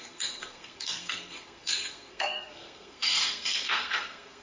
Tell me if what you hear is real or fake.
fake